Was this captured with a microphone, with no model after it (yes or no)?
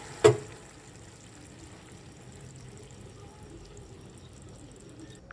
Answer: yes